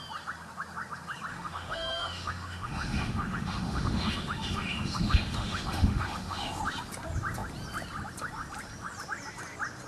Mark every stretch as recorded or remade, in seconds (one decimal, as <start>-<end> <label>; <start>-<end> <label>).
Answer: 0.0-1.3 recorded; 1.3-6.6 remade; 6.6-9.9 recorded